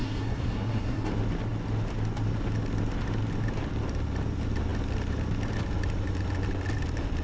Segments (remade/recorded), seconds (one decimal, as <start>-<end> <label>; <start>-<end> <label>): 0.0-1.1 remade; 1.1-7.2 recorded